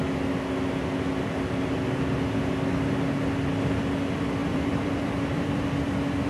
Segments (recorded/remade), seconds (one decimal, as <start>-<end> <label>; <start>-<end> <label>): 0.0-4.4 recorded; 4.4-5.7 remade; 5.7-6.3 recorded